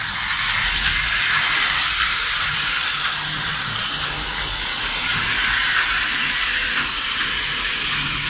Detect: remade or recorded recorded